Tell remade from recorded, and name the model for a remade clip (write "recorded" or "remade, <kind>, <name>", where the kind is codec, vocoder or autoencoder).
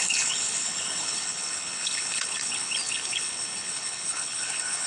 remade, codec, HILCodec